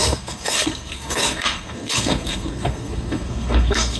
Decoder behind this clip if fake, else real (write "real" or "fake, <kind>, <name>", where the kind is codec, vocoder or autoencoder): fake, codec, SNAC